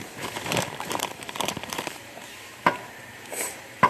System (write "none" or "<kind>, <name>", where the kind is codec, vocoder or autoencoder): vocoder, BigVGAN v2